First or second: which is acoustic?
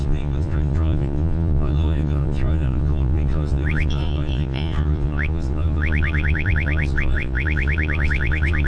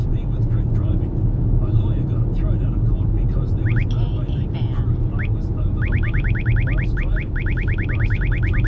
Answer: second